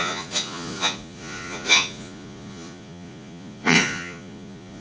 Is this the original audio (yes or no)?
no